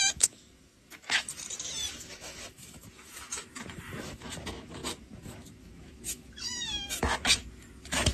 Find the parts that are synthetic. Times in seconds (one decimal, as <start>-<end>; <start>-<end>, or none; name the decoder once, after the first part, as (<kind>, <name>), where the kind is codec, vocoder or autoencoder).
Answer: 0.0-1.3 (autoencoder, DAC-VAE); 1.9-8.1